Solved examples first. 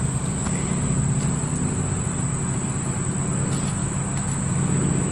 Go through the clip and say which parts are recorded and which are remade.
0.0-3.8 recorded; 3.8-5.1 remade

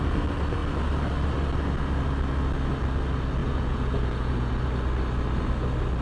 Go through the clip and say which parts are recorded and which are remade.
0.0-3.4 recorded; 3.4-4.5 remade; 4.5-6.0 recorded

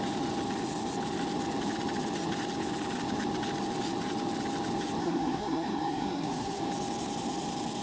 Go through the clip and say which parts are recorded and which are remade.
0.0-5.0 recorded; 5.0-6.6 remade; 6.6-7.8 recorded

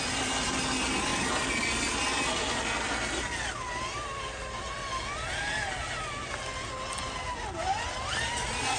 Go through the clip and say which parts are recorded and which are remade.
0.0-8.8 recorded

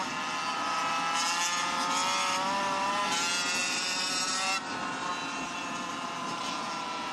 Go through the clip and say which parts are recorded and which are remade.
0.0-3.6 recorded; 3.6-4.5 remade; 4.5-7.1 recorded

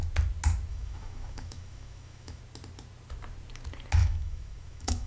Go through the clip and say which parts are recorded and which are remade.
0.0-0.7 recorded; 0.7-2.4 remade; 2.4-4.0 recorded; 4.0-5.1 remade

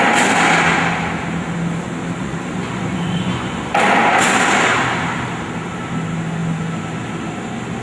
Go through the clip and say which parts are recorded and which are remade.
0.0-2.2 recorded; 2.2-3.7 remade; 3.7-7.8 recorded